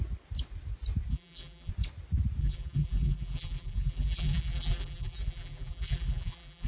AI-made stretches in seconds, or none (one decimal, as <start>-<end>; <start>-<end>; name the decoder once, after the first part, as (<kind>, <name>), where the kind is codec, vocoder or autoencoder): 1.1-1.7 (vocoder, BigVGAN v2); 2.4-6.7